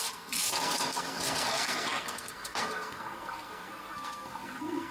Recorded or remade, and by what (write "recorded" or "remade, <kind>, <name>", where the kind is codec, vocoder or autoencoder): remade, codec, SNAC